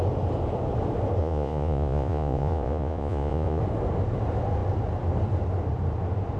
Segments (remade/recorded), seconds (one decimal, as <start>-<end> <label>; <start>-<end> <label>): 0.0-1.2 recorded; 1.2-3.6 remade; 3.6-6.4 recorded